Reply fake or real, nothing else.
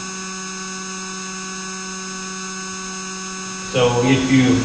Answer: real